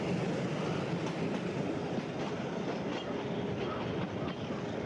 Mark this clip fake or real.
real